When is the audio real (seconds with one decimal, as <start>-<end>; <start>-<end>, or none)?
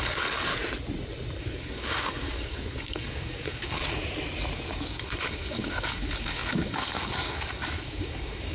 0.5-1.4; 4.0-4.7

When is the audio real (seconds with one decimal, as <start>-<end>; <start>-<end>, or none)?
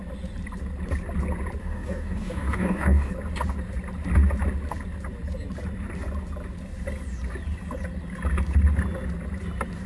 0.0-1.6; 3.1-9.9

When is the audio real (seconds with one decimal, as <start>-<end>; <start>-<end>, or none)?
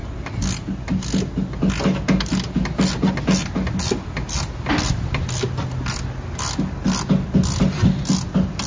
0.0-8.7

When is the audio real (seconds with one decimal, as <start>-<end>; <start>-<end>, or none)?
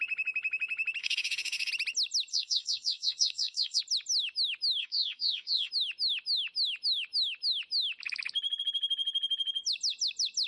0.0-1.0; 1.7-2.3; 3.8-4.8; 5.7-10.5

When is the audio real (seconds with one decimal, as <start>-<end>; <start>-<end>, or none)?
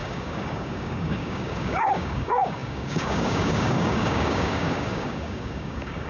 none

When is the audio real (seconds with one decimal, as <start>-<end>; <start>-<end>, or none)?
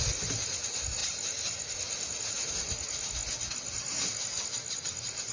0.0-5.3